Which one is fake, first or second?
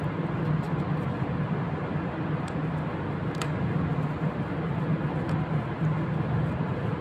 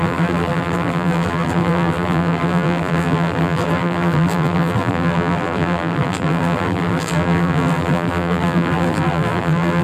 second